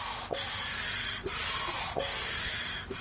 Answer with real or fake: real